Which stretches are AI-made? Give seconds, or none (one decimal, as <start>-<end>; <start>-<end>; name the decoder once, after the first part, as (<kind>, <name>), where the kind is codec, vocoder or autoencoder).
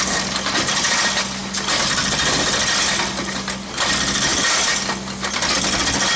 none